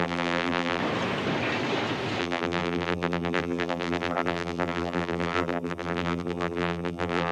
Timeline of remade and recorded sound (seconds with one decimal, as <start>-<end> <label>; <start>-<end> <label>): 0.0-0.8 remade; 0.8-2.2 recorded; 2.2-7.3 remade